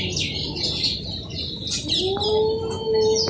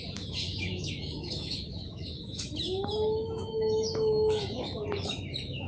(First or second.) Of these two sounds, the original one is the first